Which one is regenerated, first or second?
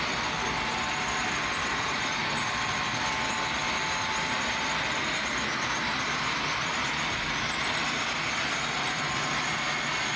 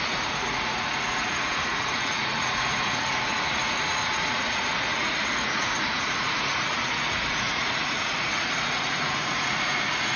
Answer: second